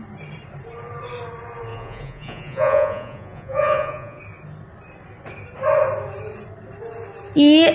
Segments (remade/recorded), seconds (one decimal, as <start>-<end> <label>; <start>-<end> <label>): 0.0-1.7 recorded; 1.7-4.2 remade; 4.2-7.7 recorded